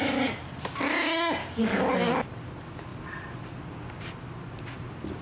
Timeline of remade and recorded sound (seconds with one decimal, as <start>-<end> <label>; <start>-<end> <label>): 0.0-1.4 recorded; 1.4-1.9 remade; 1.9-5.2 recorded